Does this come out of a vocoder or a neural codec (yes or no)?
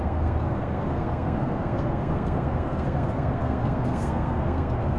yes